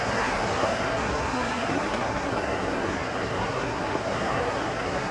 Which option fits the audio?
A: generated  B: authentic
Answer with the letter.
A